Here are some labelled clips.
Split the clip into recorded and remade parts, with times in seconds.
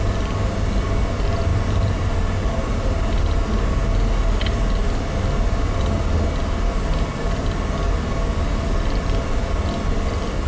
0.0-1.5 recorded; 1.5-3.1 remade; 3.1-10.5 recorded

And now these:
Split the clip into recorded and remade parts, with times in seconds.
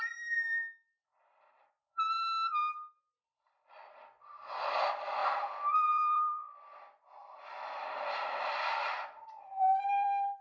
0.0-0.6 remade; 0.6-1.8 recorded; 1.8-2.6 remade; 2.6-3.7 recorded; 3.7-5.2 remade; 5.2-5.7 recorded; 5.7-10.4 remade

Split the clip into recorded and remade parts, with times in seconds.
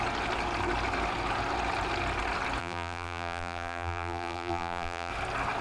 0.0-2.6 recorded; 2.6-5.1 remade; 5.1-5.6 recorded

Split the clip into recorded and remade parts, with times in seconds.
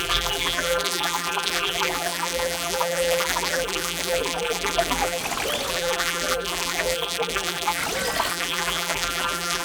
0.0-5.2 remade; 5.2-5.7 recorded; 5.7-7.8 remade; 7.8-8.3 recorded; 8.3-9.6 remade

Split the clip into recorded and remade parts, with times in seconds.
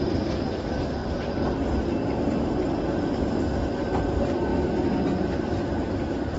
0.0-1.0 remade; 1.0-4.0 recorded; 4.0-4.5 remade; 4.5-5.2 recorded; 5.2-6.4 remade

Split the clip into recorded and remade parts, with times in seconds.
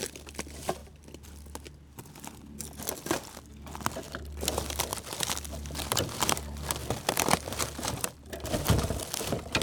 0.0-6.8 recorded; 6.8-8.6 remade; 8.6-9.6 recorded